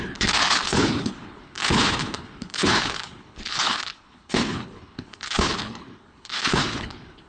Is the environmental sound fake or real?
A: fake